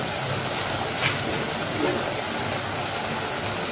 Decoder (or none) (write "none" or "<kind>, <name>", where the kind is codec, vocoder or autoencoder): none